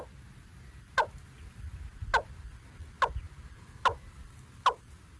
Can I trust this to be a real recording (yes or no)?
yes